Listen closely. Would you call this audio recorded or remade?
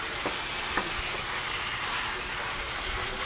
recorded